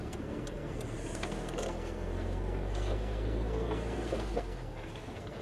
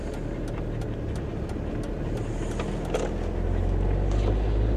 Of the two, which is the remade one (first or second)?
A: first